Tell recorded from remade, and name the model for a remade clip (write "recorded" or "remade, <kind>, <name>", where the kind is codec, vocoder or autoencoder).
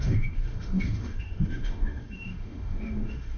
remade, autoencoder, DAC-VAE